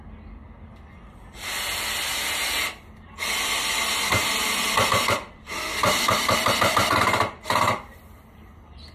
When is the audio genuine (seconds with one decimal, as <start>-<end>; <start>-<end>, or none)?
0.0-5.7; 6.7-8.9